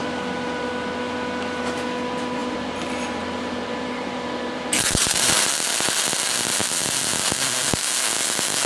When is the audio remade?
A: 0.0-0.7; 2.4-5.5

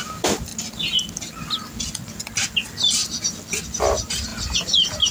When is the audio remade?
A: 4.3-5.1

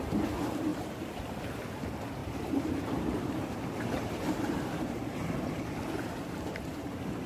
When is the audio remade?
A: 0.7-1.3; 2.2-6.6

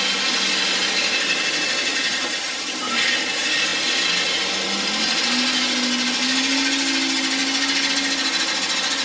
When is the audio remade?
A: 1.9-3.0

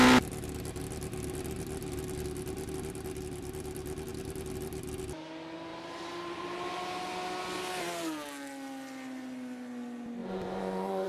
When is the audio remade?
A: 5.7-6.8; 10.2-11.1

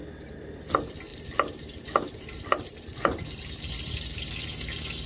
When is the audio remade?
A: 0.0-0.7; 1.1-4.2